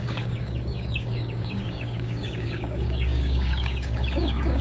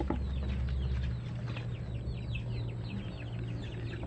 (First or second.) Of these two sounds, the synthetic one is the first